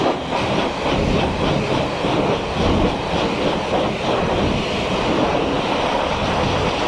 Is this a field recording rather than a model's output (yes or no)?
yes